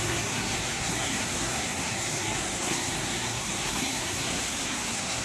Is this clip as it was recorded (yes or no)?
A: no